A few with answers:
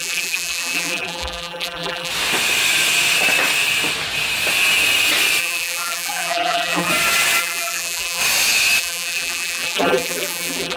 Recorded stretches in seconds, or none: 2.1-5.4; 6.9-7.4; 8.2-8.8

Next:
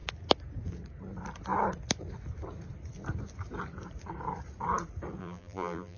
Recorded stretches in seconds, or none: 0.0-5.2

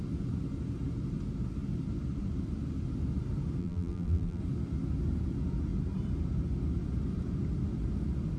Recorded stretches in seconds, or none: 0.0-3.6; 4.4-8.4

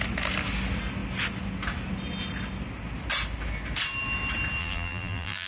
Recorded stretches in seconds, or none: 0.0-4.6

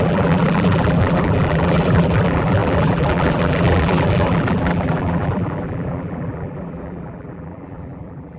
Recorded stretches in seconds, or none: none